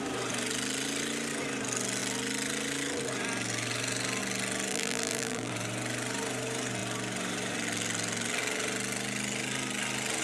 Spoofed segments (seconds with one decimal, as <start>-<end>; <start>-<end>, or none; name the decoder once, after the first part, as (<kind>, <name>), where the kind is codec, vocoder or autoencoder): 4.7-5.5 (vocoder, BigVGAN v2)